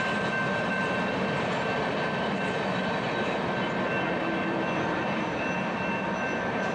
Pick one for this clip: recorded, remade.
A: remade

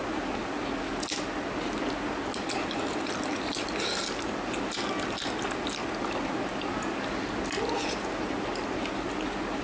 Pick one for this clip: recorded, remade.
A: recorded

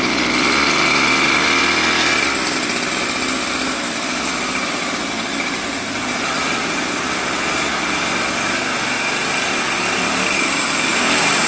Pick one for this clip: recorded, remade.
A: recorded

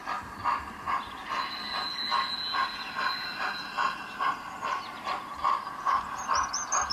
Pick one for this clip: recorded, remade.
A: recorded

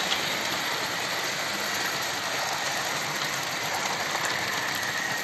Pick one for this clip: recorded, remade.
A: remade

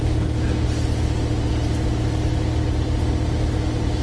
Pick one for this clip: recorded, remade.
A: recorded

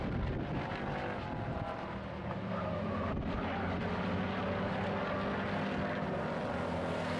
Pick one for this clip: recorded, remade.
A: recorded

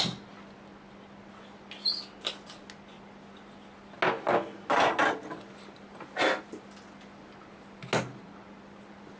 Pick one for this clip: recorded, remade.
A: recorded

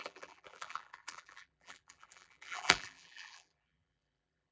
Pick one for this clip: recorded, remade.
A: remade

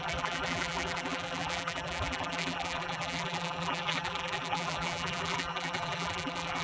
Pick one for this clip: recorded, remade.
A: remade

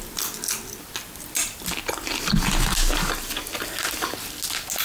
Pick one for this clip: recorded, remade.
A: recorded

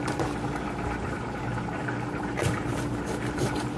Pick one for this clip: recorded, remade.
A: remade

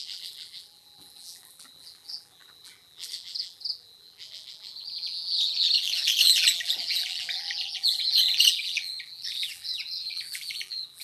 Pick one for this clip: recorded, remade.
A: remade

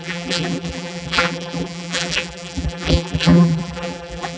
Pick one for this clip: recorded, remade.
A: remade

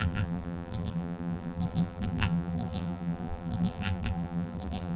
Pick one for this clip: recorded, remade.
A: remade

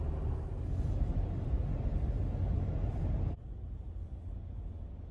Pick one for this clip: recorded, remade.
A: recorded